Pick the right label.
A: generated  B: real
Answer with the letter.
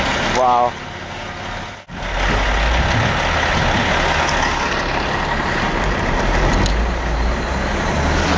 B